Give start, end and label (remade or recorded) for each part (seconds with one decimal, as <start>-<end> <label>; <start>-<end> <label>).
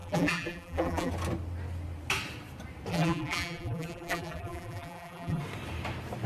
0.0-1.1 remade; 1.1-2.9 recorded; 2.9-5.4 remade; 5.4-6.3 recorded